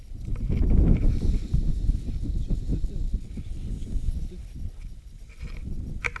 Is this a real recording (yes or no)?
yes